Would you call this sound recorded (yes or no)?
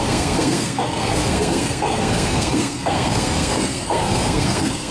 no